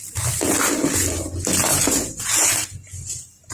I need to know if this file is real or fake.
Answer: real